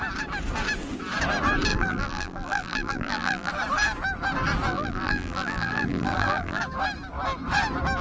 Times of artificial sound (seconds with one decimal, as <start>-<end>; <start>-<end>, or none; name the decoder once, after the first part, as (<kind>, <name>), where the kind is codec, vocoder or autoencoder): 1.7-3.5 (vocoder, BigVGAN v2); 4.7-6.6